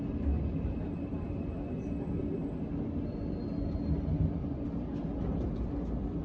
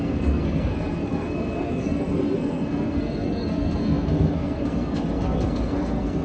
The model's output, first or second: second